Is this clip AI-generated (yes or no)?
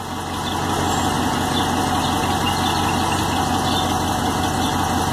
no